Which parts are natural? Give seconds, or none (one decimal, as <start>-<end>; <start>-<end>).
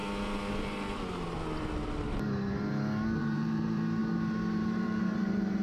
0.0-3.2